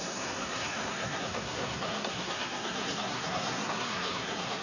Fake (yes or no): yes